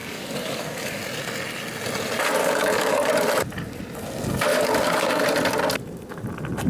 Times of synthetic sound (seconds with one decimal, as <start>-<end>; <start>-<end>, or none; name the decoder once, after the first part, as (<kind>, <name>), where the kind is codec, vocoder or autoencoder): 0.0-1.0 (codec, DAC); 2.4-3.1; 4.5-5.2